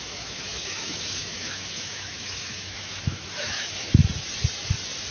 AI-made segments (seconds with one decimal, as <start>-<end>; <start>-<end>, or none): 0.0-4.0